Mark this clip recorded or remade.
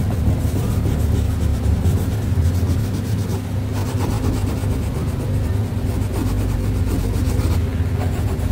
recorded